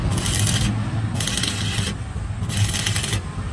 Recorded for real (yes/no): yes